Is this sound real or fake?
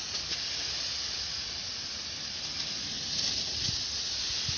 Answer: real